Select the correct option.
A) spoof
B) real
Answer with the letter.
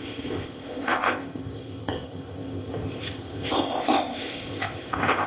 A